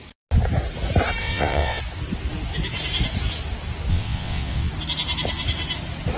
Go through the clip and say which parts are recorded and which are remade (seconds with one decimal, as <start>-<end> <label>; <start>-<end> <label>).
0.0-1.2 recorded; 1.2-1.8 remade; 1.8-3.9 recorded; 3.9-4.7 remade; 4.7-6.2 recorded